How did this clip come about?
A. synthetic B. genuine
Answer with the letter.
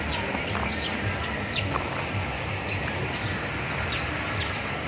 B